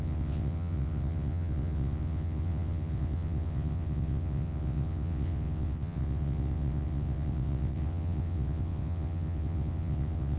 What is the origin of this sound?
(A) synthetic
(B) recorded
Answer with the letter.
A